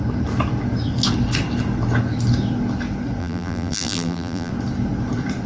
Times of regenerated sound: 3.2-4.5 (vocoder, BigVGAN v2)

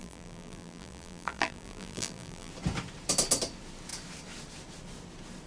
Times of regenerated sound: 0.0-2.5 (vocoder, BigVGAN v2)